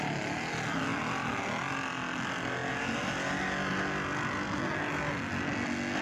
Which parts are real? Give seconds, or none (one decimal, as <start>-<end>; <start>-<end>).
0.0-6.0